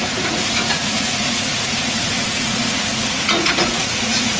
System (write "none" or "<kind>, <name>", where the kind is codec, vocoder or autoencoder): vocoder, Vocos